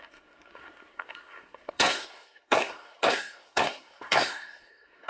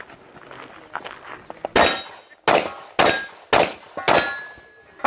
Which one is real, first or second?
second